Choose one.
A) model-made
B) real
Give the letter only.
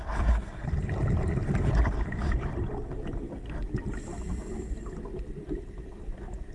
B